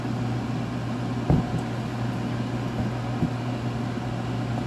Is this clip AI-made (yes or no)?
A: no